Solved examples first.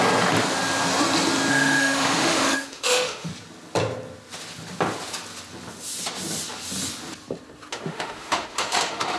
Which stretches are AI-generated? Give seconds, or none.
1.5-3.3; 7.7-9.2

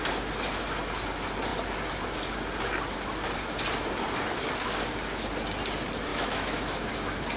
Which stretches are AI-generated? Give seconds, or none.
6.1-6.9

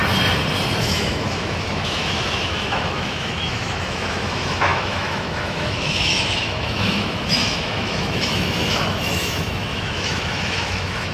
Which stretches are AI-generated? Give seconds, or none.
0.8-11.1

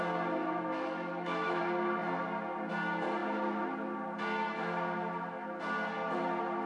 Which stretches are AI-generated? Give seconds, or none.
0.4-1.6

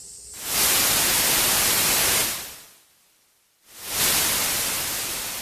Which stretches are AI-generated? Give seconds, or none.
none

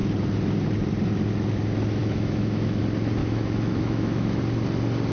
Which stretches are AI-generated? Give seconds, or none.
2.0-2.8; 3.2-4.4